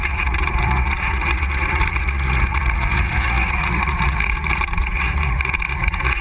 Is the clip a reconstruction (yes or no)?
yes